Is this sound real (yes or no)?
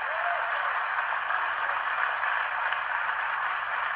yes